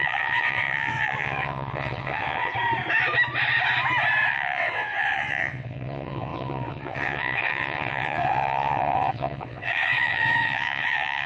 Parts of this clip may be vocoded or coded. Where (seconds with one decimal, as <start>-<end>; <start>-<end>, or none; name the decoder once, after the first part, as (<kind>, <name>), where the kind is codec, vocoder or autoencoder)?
0.0-2.5 (vocoder, WaveNeXt); 4.3-11.3